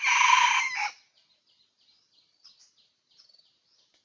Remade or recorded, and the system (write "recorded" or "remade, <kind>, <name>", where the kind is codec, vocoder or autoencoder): recorded